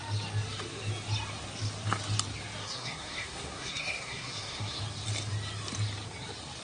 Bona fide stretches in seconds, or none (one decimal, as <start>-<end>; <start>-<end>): 0.0-2.6; 4.8-6.6